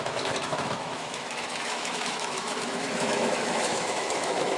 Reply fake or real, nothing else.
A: fake